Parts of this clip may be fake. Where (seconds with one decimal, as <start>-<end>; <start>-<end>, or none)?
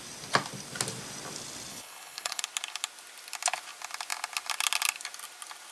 1.7-2.4